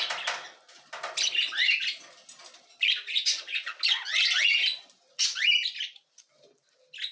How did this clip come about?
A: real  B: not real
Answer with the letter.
A